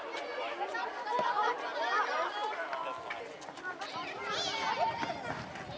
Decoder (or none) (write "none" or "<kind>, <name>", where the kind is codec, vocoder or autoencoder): none